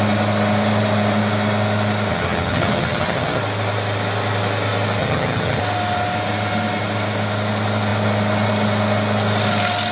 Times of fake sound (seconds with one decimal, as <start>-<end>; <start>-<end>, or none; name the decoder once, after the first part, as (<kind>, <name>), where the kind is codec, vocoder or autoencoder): 2.1-3.4 (vocoder, HiFi-GAN); 5.0-5.6